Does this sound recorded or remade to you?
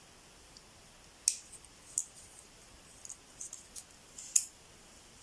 recorded